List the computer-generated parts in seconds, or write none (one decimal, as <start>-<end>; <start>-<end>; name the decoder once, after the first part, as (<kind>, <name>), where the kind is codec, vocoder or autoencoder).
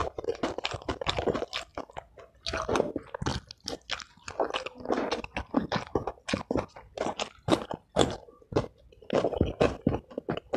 0.0-1.1 (vocoder, BigVGAN v2)